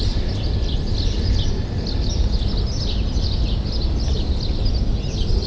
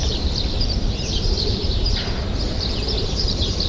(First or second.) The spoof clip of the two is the second